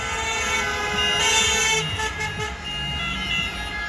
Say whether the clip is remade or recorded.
recorded